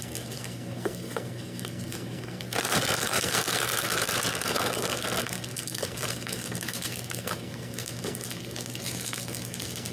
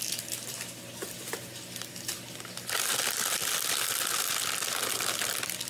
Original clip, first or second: second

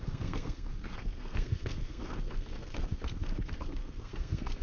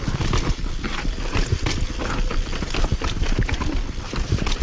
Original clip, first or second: second